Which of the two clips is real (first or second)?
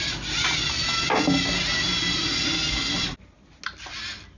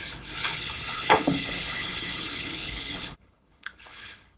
first